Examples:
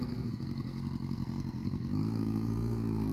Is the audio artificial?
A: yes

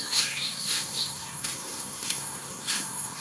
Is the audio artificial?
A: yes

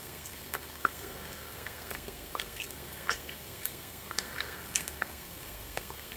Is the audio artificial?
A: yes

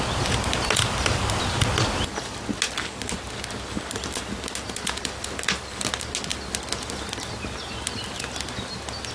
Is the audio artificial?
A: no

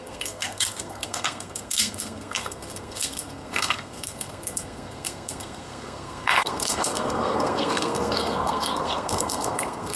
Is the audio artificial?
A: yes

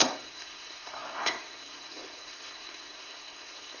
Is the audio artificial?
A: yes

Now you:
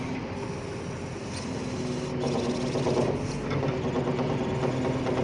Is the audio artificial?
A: no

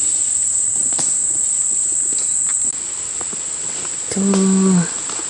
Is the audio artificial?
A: no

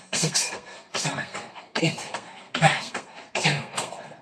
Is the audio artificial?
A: yes